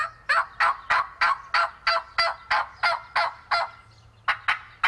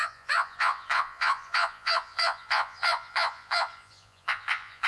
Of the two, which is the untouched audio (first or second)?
first